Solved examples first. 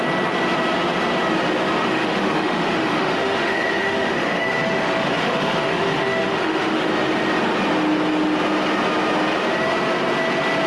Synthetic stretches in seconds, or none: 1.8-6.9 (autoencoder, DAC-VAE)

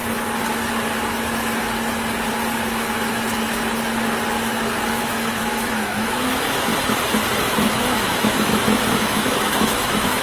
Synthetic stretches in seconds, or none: 5.0-6.7 (autoencoder, DAC-VAE); 7.7-10.2

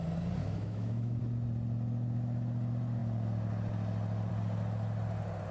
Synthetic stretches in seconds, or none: 0.4-1.2 (autoencoder, DAC-VAE)

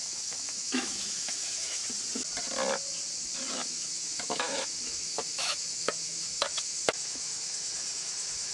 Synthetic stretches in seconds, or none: 0.0-1.8 (autoencoder, DAC-VAE); 3.5-8.5

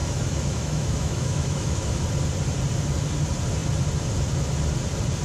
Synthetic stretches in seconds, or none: 0.0-2.0 (autoencoder, DAC-VAE)

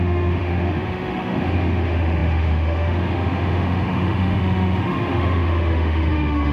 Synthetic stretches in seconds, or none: 0.0-6.5 (autoencoder, DAC-VAE)

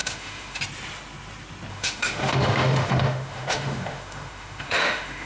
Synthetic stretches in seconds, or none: 0.0-0.6 (autoencoder, DAC-VAE); 1.7-5.3

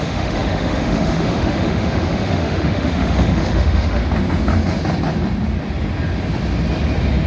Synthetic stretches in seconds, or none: 0.0-4.0 (autoencoder, DAC-VAE)